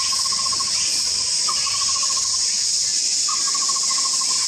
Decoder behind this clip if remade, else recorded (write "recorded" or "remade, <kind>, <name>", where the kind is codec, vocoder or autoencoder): recorded